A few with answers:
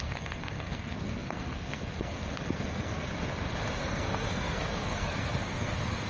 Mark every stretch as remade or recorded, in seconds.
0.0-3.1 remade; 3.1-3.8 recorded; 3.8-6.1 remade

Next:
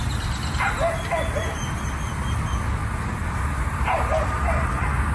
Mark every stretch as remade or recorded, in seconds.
0.0-5.1 recorded

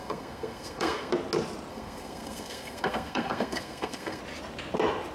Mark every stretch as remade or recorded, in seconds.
0.0-1.1 remade; 1.1-1.7 recorded; 1.7-4.2 remade; 4.2-5.1 recorded